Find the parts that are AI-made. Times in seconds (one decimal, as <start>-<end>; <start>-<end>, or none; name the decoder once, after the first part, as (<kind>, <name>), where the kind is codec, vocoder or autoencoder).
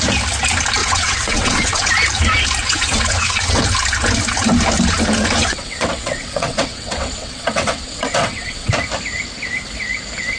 0.8-1.9 (vocoder, WaveNeXt); 2.6-3.6; 5.4-8.7